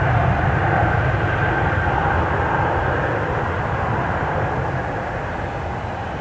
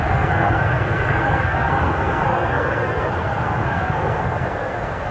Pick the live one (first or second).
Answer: first